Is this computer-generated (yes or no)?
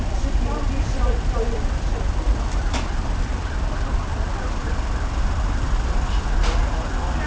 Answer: yes